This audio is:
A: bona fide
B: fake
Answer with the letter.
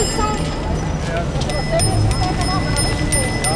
A